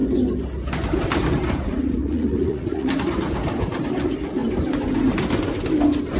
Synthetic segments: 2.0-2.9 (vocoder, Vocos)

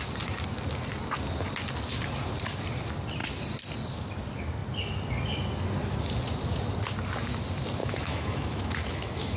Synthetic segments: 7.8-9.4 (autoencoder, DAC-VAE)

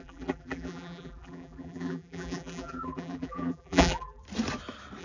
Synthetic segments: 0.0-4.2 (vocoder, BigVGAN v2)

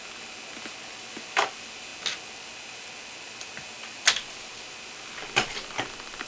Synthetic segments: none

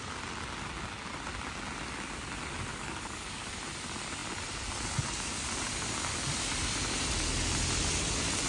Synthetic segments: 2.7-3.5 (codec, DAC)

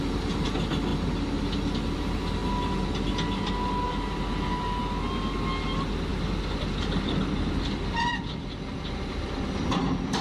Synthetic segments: 6.1-10.2 (vocoder, BigVGAN v2)

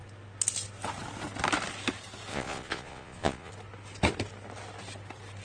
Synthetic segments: 2.3-3.5 (vocoder, Vocos)

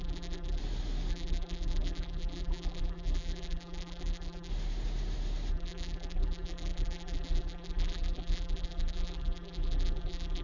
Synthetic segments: 0.0-0.6 (vocoder, BigVGAN v2); 1.1-4.5; 5.5-10.4